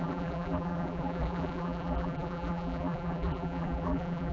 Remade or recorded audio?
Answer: remade